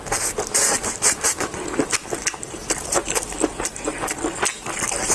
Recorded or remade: recorded